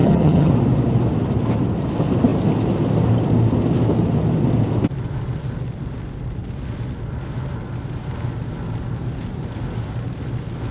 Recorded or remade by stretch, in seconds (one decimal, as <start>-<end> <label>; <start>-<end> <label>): 0.0-0.5 remade; 0.5-10.7 recorded